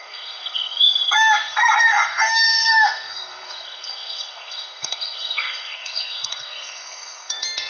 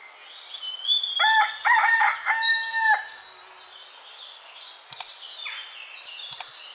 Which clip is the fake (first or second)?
first